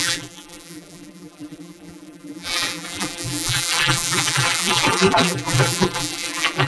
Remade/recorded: remade